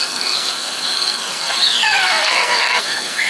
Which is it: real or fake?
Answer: fake